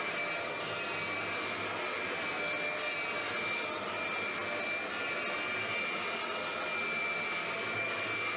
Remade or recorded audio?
recorded